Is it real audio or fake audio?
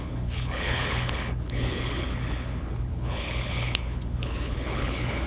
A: fake